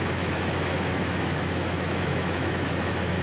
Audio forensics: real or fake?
fake